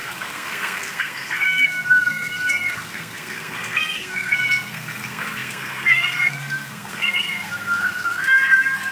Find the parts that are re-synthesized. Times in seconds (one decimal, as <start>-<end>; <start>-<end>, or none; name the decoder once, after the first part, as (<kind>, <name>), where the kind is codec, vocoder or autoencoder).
0.0-8.9 (codec, SNAC)